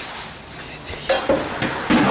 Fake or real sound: real